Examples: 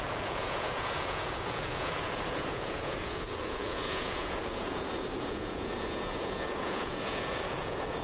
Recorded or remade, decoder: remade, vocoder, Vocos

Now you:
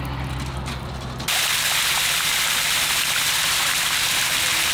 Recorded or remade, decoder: remade, vocoder, BigVGAN v2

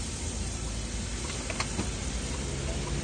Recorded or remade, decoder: recorded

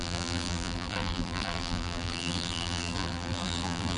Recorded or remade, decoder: remade, vocoder, BigVGAN v2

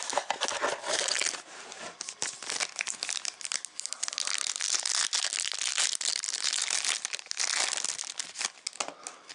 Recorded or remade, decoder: recorded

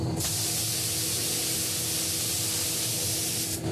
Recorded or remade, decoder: recorded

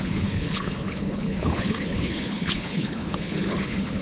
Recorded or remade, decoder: remade, codec, HILCodec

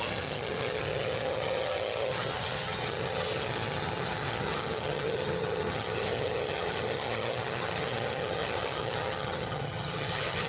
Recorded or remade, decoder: remade, vocoder, HiFi-GAN